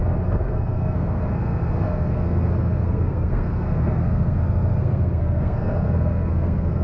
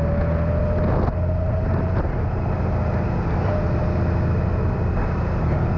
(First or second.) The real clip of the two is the second